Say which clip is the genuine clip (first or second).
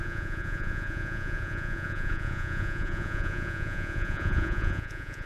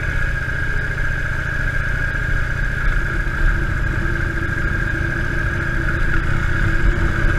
second